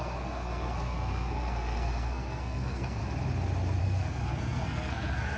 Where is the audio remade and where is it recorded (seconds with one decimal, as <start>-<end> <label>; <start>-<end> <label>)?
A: 0.0-3.0 remade; 3.0-3.8 recorded; 3.8-5.4 remade